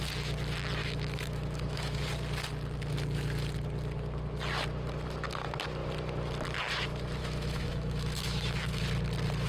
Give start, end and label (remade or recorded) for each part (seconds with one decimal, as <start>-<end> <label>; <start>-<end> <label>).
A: 0.0-0.8 recorded; 0.8-2.0 remade; 2.0-7.2 recorded; 7.2-8.8 remade; 8.8-9.5 recorded